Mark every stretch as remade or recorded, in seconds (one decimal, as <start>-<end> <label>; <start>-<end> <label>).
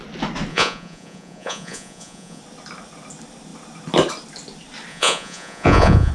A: 0.0-0.5 recorded; 0.5-2.4 remade; 2.4-4.9 recorded; 4.9-6.1 remade